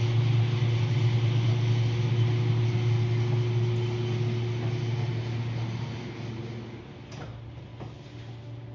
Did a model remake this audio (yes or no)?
no